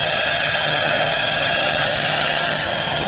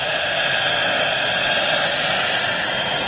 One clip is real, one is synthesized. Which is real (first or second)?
second